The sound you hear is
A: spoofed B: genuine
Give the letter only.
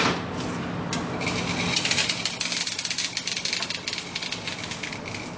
B